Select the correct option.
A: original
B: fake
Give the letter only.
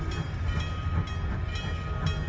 A